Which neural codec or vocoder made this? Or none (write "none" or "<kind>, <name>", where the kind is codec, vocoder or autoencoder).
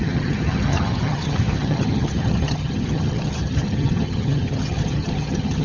vocoder, HiFi-GAN